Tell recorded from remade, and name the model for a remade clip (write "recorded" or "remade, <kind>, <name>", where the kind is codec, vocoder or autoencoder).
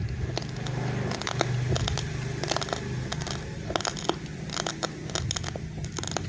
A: recorded